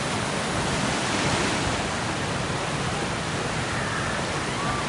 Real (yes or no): yes